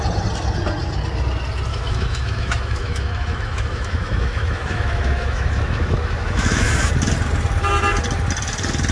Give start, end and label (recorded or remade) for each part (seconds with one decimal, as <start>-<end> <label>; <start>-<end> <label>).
0.0-1.7 recorded; 1.7-6.9 remade; 6.9-8.9 recorded